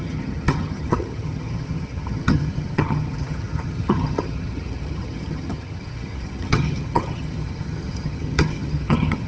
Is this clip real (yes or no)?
no